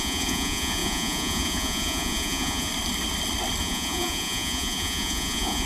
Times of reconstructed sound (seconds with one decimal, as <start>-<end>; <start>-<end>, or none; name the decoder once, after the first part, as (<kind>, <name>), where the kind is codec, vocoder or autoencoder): 0.0-2.7 (vocoder, Vocos); 3.6-5.7